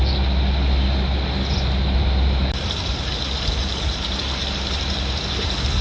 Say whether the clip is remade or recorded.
recorded